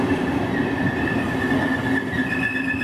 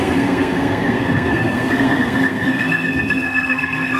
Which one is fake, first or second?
second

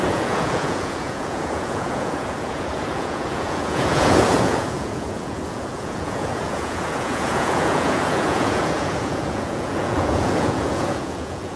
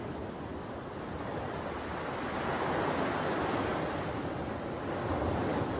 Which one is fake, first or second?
first